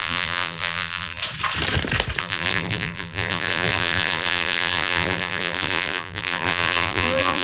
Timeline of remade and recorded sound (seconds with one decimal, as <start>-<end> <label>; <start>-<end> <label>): 0.0-1.2 remade; 1.2-2.2 recorded; 2.2-7.4 remade